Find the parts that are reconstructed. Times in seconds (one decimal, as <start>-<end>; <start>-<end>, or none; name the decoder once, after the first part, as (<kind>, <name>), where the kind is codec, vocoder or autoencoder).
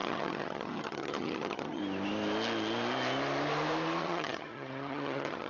0.0-1.8 (vocoder, HiFi-GAN); 4.0-5.5